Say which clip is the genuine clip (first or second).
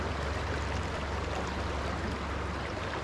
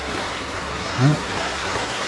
first